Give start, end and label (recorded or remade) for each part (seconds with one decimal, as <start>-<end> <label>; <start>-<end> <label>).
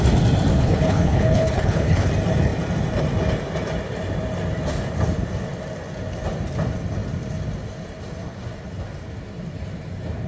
0.0-0.5 recorded; 0.5-2.1 remade; 2.1-10.3 recorded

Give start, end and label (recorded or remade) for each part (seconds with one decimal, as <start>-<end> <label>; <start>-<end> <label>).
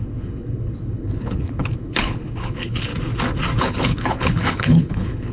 0.0-2.9 remade; 2.9-3.6 recorded; 3.6-5.3 remade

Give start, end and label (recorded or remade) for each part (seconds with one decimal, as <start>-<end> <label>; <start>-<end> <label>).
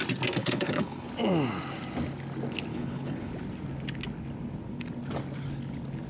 0.0-0.4 recorded; 0.4-1.1 remade; 1.1-2.7 recorded; 2.7-3.3 remade; 3.3-6.1 recorded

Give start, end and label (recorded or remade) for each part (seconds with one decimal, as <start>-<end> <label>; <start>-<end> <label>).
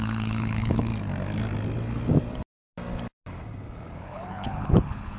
0.0-0.9 remade; 0.9-4.0 recorded; 4.0-5.2 remade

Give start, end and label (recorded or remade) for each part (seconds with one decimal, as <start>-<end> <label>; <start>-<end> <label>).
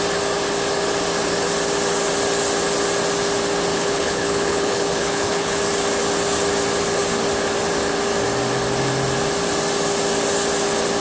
0.0-3.7 recorded; 3.7-5.6 remade; 5.6-11.0 recorded